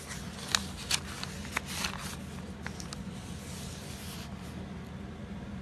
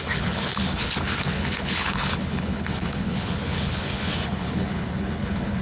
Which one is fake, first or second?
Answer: second